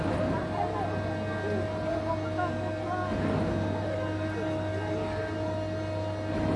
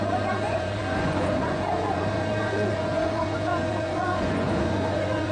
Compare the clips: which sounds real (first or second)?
first